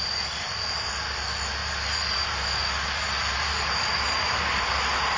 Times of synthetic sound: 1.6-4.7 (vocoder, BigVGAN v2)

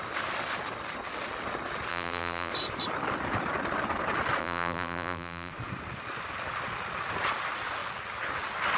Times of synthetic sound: 1.9-2.5 (vocoder, BigVGAN v2); 4.4-5.5

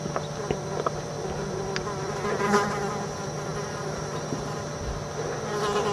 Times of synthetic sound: 2.4-2.9 (vocoder, BigVGAN v2); 3.5-4.4